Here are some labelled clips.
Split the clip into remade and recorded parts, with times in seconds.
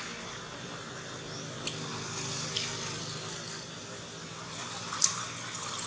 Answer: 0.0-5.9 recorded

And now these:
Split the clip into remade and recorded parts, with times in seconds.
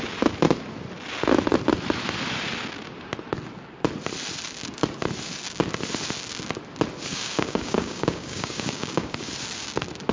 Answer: 0.0-7.1 recorded; 7.1-9.3 remade; 9.3-10.1 recorded